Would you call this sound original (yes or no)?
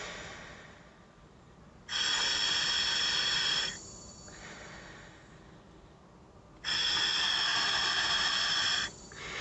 yes